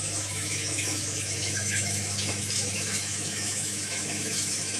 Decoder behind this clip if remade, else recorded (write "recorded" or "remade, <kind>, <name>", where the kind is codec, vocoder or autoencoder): remade, autoencoder, DAC-VAE